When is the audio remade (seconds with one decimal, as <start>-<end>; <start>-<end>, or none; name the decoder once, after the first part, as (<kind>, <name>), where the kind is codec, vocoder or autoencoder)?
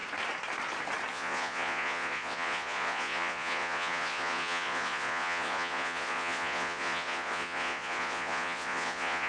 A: 1.1-9.3 (vocoder, Vocos)